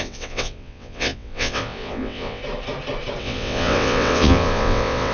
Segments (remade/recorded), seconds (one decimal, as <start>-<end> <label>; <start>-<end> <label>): 0.0-2.4 remade; 2.4-3.2 recorded; 3.2-5.1 remade